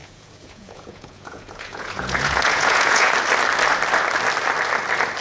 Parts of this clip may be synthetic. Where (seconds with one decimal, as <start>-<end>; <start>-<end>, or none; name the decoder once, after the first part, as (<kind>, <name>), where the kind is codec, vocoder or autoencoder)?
0.0-3.1 (vocoder, Vocos)